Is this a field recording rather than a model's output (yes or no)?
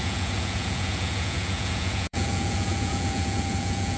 no